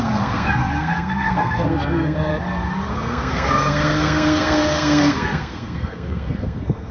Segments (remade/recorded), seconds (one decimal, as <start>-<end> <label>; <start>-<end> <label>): 0.0-2.3 remade; 2.3-2.9 recorded; 2.9-6.9 remade

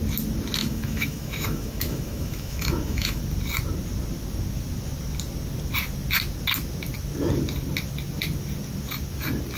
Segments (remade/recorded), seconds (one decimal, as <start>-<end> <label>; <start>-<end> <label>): 0.0-0.6 recorded; 0.6-3.2 remade; 3.2-9.6 recorded

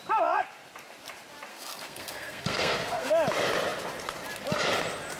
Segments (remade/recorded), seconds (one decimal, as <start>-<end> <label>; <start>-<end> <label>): 0.0-1.5 recorded; 1.5-3.1 remade; 3.1-5.2 recorded